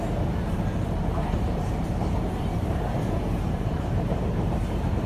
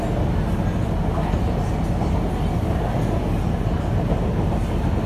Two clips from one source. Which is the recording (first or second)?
second